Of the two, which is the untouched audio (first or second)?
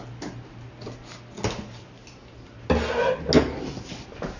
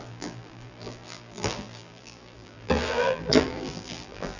first